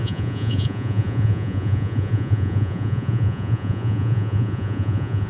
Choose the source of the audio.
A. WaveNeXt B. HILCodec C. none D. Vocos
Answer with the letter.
D